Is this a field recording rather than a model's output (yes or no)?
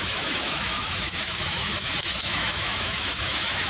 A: no